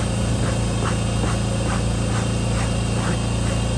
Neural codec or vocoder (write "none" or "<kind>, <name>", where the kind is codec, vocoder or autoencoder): none